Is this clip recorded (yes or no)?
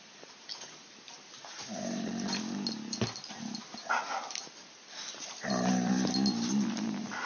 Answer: yes